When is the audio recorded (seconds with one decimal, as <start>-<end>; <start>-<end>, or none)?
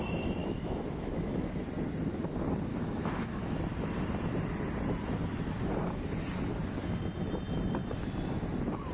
0.0-0.4; 1.6-2.7; 3.6-8.9